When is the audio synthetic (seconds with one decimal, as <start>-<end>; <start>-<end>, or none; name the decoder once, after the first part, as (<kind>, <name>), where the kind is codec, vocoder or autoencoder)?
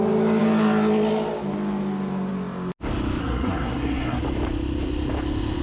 3.2-4.2 (codec, SNAC)